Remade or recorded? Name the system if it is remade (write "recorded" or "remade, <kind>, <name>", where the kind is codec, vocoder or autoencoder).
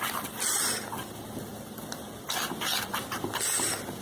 recorded